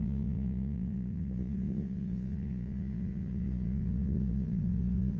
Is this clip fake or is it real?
fake